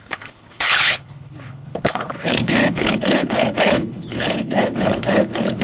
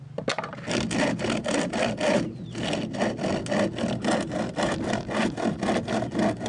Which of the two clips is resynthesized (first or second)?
first